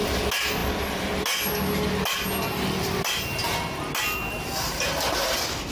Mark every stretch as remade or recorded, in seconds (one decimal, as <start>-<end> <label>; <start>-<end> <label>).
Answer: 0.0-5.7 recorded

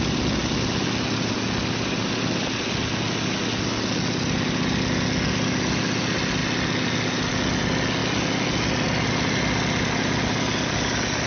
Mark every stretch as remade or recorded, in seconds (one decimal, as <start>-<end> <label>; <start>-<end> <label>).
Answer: 0.0-11.3 recorded

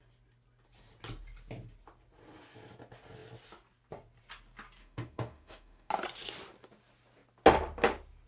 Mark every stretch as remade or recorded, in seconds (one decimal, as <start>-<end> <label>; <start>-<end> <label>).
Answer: 0.0-4.8 recorded; 4.8-5.9 remade; 5.9-8.3 recorded

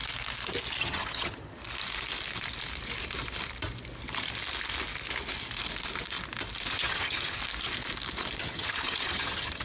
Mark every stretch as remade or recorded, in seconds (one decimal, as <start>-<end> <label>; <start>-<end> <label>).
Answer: 0.0-0.8 recorded; 0.8-1.6 remade; 1.6-6.7 recorded; 6.7-7.4 remade; 7.4-8.4 recorded; 8.4-9.6 remade